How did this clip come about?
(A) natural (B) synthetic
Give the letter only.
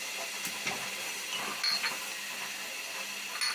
A